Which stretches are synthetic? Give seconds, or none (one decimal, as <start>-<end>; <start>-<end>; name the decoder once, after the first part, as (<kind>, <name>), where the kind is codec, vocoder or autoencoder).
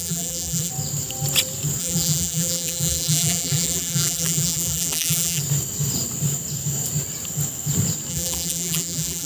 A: 0.0-0.7 (vocoder, BigVGAN v2); 1.8-5.4; 8.1-9.3